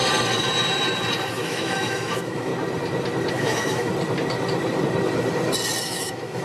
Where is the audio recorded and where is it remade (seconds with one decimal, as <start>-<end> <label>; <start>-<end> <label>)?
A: 0.0-1.3 recorded; 1.3-2.5 remade; 2.5-3.3 recorded; 3.3-3.9 remade; 3.9-5.8 recorded; 5.8-6.4 remade